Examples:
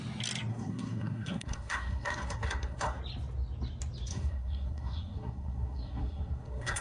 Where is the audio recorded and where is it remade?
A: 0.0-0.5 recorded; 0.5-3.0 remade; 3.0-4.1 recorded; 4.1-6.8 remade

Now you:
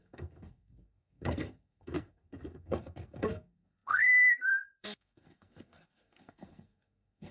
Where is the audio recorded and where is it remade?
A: 0.0-7.3 remade

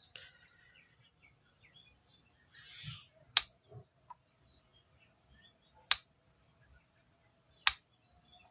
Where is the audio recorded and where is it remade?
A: 0.0-8.5 recorded

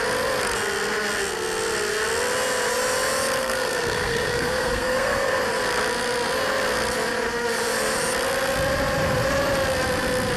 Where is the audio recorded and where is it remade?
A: 0.0-3.4 recorded; 3.4-5.4 remade; 5.4-10.4 recorded

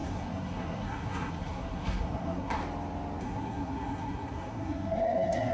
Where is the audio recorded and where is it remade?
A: 0.0-2.6 remade; 2.6-3.2 recorded; 3.2-5.5 remade

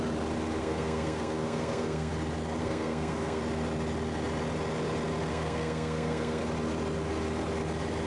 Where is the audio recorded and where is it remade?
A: 0.0-0.6 recorded; 0.6-2.1 remade; 2.1-2.6 recorded; 2.6-3.4 remade; 3.4-5.3 recorded; 5.3-6.4 remade; 6.4-8.1 recorded